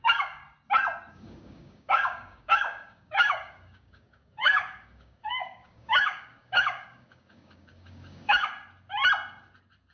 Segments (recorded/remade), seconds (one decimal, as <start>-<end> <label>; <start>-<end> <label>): 0.0-0.4 remade; 0.4-1.1 recorded; 1.1-8.5 remade; 8.5-9.9 recorded